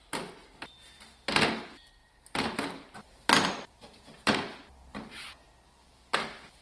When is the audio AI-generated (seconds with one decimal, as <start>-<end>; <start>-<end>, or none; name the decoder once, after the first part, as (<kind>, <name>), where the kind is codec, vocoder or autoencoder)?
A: 2.0-5.5 (vocoder, BigVGAN v2)